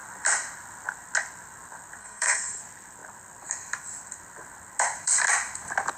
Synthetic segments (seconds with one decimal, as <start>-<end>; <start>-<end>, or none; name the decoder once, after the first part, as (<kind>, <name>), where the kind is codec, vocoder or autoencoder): 2.0-2.6 (codec, SNAC)